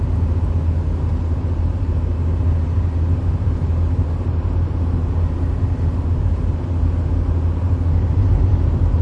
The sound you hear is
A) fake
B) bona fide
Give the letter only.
B